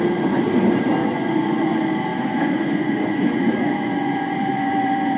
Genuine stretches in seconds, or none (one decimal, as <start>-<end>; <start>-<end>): 0.0-1.0; 1.7-2.1